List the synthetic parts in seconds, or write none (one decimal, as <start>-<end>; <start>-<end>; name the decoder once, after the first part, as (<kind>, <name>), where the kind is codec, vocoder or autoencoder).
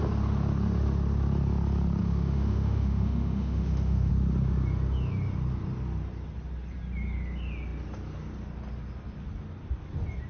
2.0-4.1 (autoencoder, DAC-VAE)